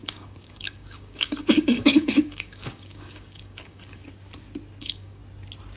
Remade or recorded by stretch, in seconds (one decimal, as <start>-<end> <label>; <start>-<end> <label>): 0.0-4.0 remade; 4.0-4.8 recorded; 4.8-5.2 remade; 5.2-5.8 recorded